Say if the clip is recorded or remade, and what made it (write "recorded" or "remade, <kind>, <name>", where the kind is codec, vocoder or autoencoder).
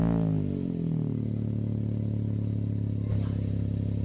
recorded